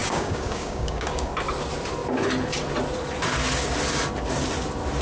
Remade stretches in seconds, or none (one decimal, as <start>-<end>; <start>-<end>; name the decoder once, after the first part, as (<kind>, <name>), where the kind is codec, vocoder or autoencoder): 0.0-1.3 (codec, DAC)